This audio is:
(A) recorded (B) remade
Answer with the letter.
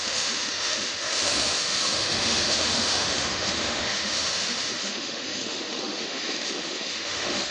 B